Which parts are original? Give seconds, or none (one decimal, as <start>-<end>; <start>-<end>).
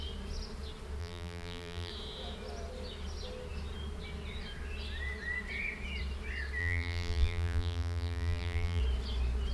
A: 0.0-1.0; 1.9-6.6; 8.8-9.5